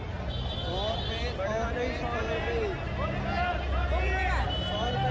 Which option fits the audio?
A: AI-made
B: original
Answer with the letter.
B